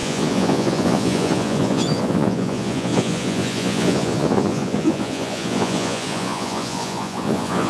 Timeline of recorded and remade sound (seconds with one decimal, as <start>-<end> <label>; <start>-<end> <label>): 0.0-7.7 remade

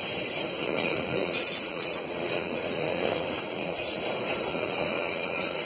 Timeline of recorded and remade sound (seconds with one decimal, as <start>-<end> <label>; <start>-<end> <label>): 0.0-0.6 recorded; 0.6-4.0 remade; 4.0-4.5 recorded; 4.5-5.7 remade

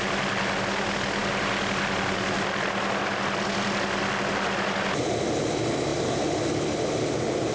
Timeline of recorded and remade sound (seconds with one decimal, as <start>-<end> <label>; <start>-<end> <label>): 0.0-7.5 recorded

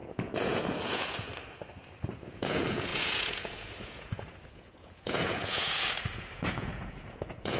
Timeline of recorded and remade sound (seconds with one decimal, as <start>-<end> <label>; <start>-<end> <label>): 0.0-1.3 remade; 1.3-2.1 recorded; 2.1-7.6 remade

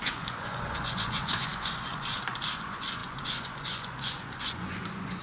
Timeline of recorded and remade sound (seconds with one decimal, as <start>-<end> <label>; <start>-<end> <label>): 0.0-5.2 remade

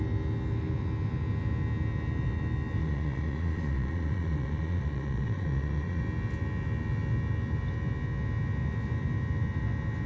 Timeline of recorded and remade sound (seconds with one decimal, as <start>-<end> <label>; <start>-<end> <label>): 0.0-2.8 recorded; 2.8-6.0 remade; 6.0-10.1 recorded

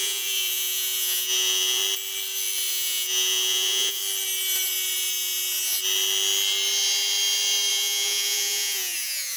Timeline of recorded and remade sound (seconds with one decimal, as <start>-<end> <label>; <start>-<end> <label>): 0.0-1.8 remade; 1.8-2.7 recorded; 2.7-4.0 remade; 4.0-7.7 recorded; 7.7-9.4 remade